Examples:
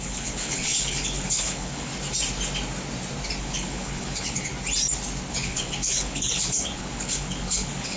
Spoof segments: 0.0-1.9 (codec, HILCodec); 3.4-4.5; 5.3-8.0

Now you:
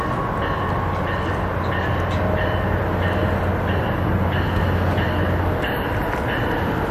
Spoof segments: none

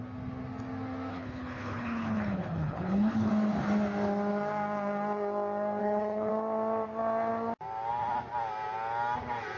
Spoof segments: 1.1-3.3 (codec, HILCodec); 5.8-6.3

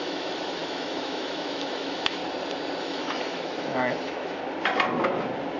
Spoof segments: 0.0-2.2 (autoencoder, DAC-VAE); 2.8-4.4

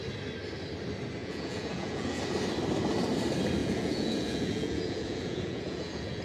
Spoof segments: 1.2-2.2 (vocoder, Vocos); 3.6-6.2

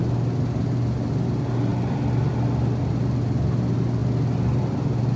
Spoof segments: none

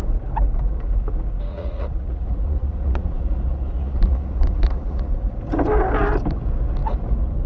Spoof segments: 1.5-5.1 (vocoder, Vocos)

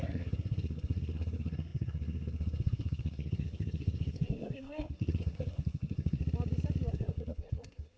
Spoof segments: 0.0-6.2 (codec, SNAC); 6.9-8.0